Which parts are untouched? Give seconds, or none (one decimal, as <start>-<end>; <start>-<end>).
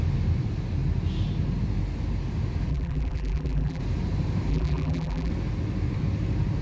0.0-2.7; 3.8-4.5; 5.3-6.6